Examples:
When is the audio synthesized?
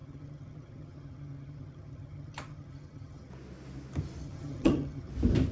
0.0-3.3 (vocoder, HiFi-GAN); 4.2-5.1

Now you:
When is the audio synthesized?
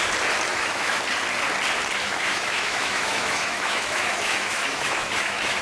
0.5-1.0 (autoencoder, DAC-VAE); 2.0-5.6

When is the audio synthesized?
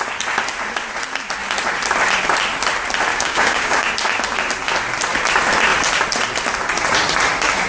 3.1-3.9 (codec, DAC)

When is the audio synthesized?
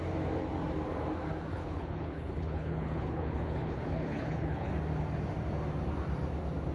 1.5-4.7 (codec, HILCodec)